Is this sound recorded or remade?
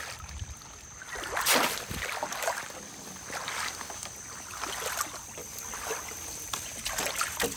recorded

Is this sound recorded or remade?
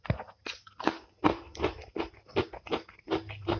recorded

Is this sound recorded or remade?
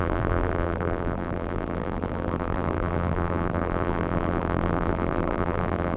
remade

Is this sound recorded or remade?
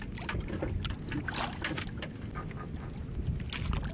recorded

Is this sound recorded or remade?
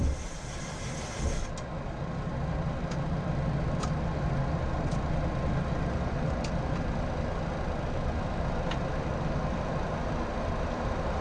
recorded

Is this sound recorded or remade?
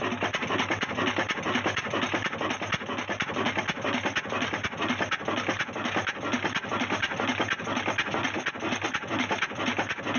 recorded